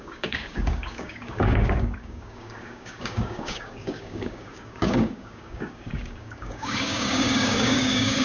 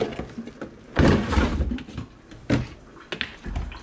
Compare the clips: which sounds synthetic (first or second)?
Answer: first